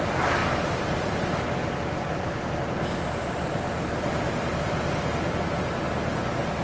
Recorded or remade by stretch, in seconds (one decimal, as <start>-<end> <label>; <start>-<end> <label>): 0.0-0.4 recorded; 0.4-2.5 remade; 2.5-3.5 recorded; 3.5-4.8 remade; 4.8-6.6 recorded